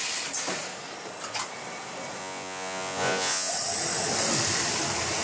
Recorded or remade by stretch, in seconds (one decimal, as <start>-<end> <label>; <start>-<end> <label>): 0.0-2.2 recorded; 2.2-3.5 remade; 3.5-5.2 recorded

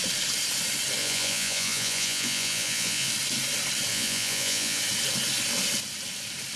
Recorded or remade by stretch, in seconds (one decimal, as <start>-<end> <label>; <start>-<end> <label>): 0.0-1.0 recorded; 1.0-3.1 remade; 3.1-3.9 recorded; 3.9-4.8 remade; 4.8-6.6 recorded

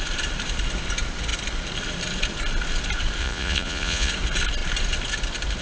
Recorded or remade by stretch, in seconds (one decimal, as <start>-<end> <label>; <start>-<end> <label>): 0.0-3.2 recorded; 3.2-4.1 remade; 4.1-5.6 recorded

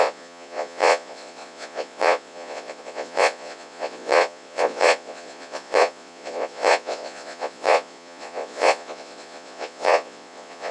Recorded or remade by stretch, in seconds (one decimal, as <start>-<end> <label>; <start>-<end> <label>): 0.0-10.7 remade

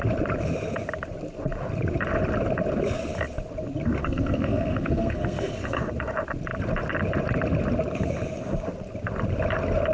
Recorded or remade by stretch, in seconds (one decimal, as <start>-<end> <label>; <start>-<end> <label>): 0.0-4.0 recorded; 4.0-5.8 remade; 5.8-9.9 recorded

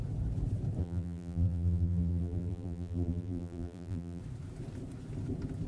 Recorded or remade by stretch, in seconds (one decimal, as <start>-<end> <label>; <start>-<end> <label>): 0.0-0.8 recorded; 0.8-4.2 remade; 4.2-5.7 recorded